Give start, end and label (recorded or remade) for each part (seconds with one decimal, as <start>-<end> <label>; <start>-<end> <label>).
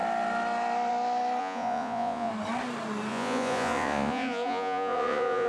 0.0-1.4 recorded; 1.4-2.3 remade; 2.3-3.1 recorded; 3.1-5.5 remade